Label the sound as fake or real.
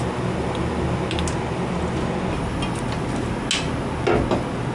real